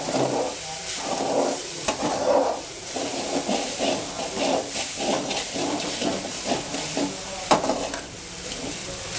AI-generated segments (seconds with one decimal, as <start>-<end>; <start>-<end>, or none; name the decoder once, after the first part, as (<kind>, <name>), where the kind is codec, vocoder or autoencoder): none